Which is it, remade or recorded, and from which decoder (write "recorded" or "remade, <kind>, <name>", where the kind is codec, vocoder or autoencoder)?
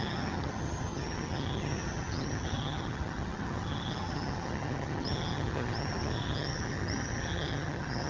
remade, vocoder, HiFi-GAN